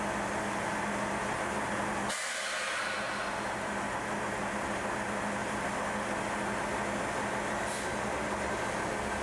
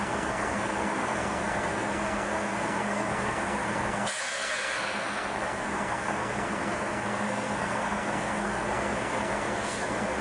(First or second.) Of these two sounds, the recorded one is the first